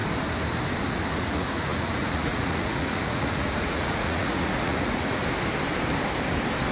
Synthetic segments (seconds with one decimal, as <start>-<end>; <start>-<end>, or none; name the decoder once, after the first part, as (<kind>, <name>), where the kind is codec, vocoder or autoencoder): 1.1-5.2 (vocoder, Vocos)